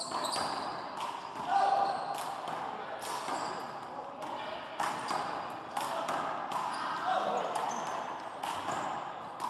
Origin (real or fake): real